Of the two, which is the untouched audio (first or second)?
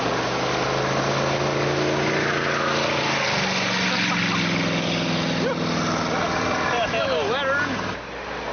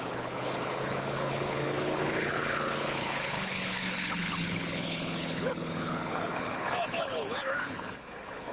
first